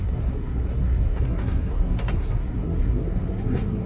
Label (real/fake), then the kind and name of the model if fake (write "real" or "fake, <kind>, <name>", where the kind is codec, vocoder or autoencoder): fake, codec, SNAC